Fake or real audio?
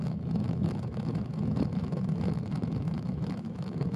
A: fake